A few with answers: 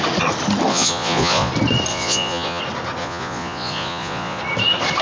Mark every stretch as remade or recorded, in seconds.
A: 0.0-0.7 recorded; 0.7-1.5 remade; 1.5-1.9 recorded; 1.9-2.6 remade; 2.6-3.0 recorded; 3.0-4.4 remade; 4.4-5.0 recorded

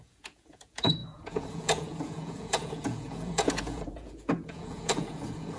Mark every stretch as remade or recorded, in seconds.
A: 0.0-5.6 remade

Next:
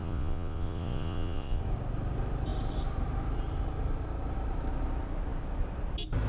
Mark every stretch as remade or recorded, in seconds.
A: 0.0-1.6 remade; 1.6-6.3 recorded

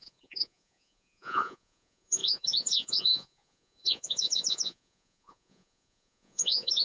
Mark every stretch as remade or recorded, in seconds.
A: 0.0-6.8 remade

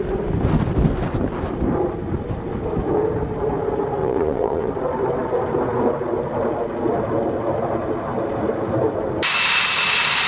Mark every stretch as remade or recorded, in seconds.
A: 0.0-4.0 recorded; 4.0-4.7 remade; 4.7-10.3 recorded

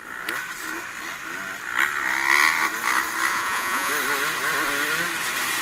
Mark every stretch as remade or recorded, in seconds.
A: 0.0-3.3 recorded; 3.3-3.9 remade; 3.9-5.6 recorded